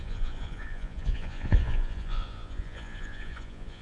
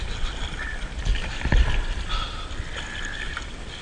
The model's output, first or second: first